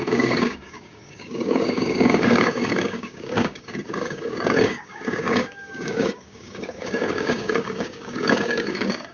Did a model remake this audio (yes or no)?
yes